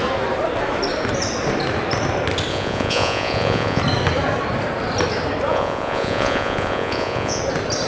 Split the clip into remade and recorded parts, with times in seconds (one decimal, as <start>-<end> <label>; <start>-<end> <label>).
0.0-2.5 recorded; 2.5-3.8 remade; 3.8-5.5 recorded; 5.5-7.4 remade; 7.4-7.9 recorded